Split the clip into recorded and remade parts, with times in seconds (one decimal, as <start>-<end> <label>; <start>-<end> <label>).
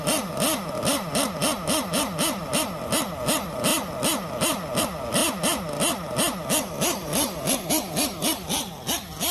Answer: 0.0-9.3 recorded